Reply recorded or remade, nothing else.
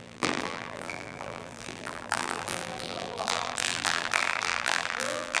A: remade